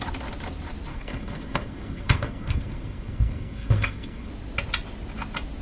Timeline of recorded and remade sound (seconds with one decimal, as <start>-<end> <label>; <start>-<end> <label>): 0.0-0.9 recorded; 0.9-4.3 remade; 4.3-5.6 recorded